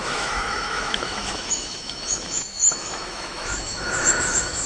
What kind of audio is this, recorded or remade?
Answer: remade